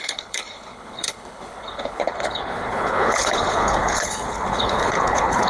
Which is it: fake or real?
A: fake